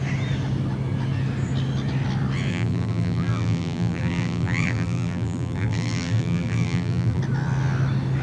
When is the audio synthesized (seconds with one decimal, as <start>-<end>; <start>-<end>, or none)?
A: 2.5-7.2